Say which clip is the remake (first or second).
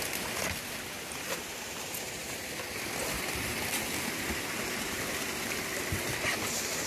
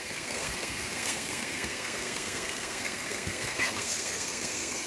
second